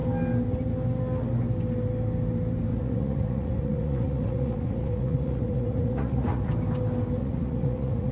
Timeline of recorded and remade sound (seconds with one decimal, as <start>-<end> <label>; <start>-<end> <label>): 0.0-2.7 recorded; 2.7-6.5 remade; 6.5-7.2 recorded; 7.2-8.1 remade